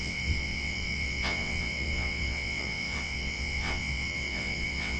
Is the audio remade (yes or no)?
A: yes